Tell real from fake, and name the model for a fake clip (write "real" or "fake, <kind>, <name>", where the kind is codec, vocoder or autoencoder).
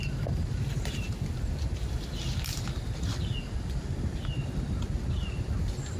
real